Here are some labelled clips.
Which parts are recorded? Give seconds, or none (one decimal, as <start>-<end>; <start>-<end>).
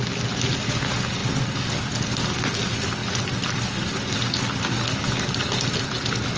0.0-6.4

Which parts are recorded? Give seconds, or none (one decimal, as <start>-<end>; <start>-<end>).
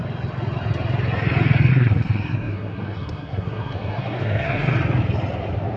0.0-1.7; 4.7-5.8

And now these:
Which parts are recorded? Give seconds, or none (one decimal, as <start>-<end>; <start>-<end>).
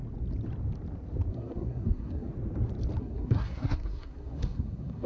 0.0-1.3; 2.3-3.0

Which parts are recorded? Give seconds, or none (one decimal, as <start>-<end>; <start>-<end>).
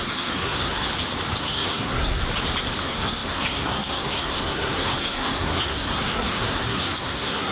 0.9-1.4; 2.2-2.8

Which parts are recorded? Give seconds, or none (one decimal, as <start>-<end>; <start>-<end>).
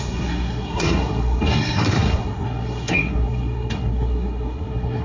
none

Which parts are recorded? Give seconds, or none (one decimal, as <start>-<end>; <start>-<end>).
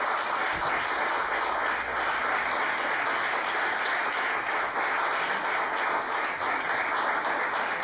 0.0-7.8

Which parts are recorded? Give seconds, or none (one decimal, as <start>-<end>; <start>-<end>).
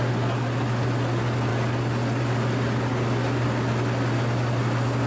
0.0-5.1